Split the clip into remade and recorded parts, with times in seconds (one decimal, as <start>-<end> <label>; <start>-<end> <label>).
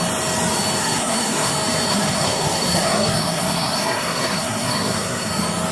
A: 0.0-0.8 recorded; 0.8-1.5 remade; 1.5-1.9 recorded; 1.9-5.3 remade; 5.3-5.7 recorded